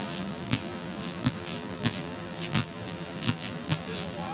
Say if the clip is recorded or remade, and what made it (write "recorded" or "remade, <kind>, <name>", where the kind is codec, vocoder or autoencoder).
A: remade, vocoder, BigVGAN v2